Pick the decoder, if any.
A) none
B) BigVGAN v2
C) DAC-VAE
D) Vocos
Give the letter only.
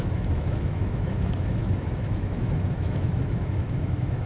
C